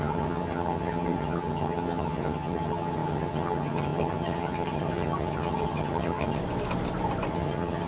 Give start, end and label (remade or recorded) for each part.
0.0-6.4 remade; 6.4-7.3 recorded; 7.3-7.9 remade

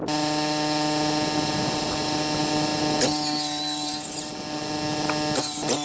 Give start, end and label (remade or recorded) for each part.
0.0-5.8 recorded

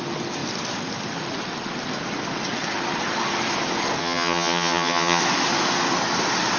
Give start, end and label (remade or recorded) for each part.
0.0-4.0 recorded; 4.0-5.2 remade; 5.2-6.6 recorded